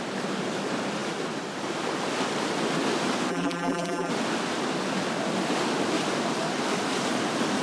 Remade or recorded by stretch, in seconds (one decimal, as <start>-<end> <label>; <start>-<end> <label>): 0.0-3.3 recorded; 3.3-4.1 remade; 4.1-7.6 recorded